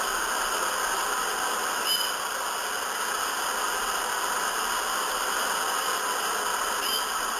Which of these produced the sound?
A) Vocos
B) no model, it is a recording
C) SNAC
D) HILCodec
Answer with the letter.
B